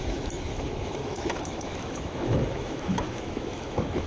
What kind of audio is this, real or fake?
fake